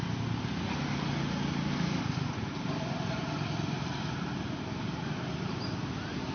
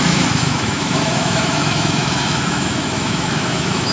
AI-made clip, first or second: second